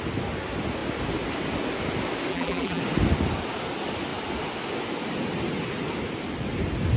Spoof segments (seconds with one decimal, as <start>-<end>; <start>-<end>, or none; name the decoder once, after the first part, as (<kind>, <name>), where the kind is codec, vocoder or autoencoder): 2.3-2.8 (vocoder, BigVGAN v2)